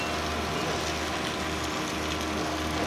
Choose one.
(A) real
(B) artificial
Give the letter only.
A